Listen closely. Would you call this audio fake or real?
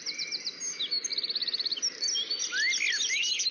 real